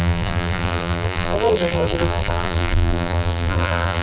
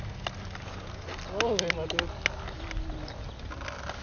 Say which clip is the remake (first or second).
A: first